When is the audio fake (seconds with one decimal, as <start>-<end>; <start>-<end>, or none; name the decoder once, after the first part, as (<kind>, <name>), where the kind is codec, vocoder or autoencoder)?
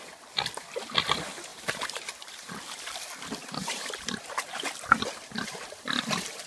1.5-2.5 (vocoder, BigVGAN v2); 3.4-4.0